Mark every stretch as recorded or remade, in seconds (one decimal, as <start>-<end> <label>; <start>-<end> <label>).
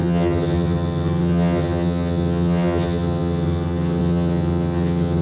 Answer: 0.0-5.2 remade